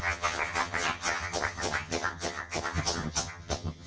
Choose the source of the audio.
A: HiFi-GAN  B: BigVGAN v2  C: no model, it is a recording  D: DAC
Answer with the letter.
A